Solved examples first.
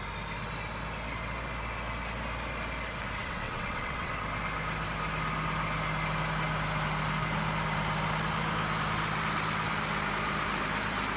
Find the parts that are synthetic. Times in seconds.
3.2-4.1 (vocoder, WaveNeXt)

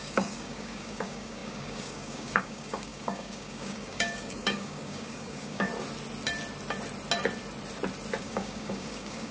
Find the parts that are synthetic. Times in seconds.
0.0-5.7 (codec, DAC); 8.2-9.3